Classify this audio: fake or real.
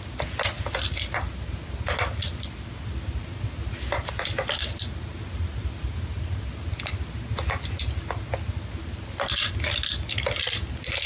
real